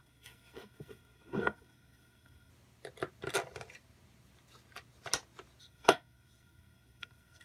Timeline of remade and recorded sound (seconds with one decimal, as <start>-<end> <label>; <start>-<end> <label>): 0.0-2.5 remade; 2.5-5.6 recorded; 5.6-7.4 remade